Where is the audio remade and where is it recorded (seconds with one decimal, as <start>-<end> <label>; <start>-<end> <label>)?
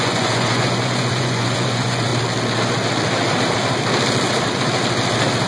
0.0-2.1 remade; 2.1-5.5 recorded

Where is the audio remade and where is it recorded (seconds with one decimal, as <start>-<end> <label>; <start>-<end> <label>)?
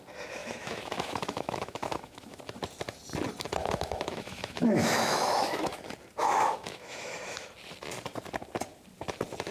0.0-0.4 recorded; 0.4-2.4 remade; 2.4-3.6 recorded; 3.6-5.8 remade; 5.8-6.2 recorded; 6.2-7.5 remade; 7.5-9.5 recorded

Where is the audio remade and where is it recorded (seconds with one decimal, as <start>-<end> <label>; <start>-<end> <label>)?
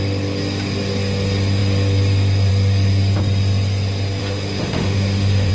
0.0-4.2 recorded; 4.2-5.5 remade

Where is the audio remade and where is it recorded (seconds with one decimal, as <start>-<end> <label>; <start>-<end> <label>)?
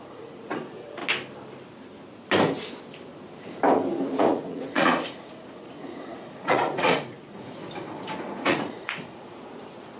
0.0-1.0 remade; 1.0-4.2 recorded; 4.2-7.6 remade; 7.6-8.3 recorded; 8.3-10.0 remade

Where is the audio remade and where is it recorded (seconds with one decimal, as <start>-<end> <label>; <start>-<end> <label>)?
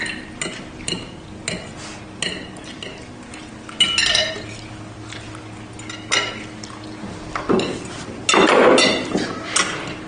0.0-10.1 recorded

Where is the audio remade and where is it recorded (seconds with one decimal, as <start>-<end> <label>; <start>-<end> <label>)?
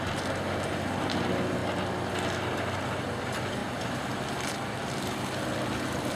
0.0-3.6 recorded; 3.6-6.2 remade